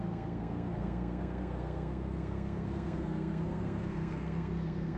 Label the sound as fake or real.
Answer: fake